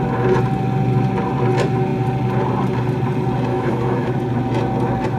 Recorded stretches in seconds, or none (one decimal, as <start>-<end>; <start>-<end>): 0.0-3.5; 4.1-5.2